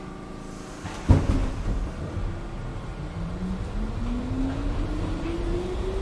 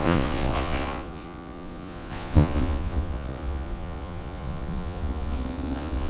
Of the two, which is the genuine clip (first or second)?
first